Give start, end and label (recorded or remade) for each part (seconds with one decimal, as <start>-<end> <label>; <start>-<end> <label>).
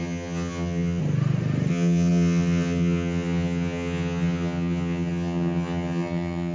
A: 0.0-1.0 remade; 1.0-1.7 recorded; 1.7-6.5 remade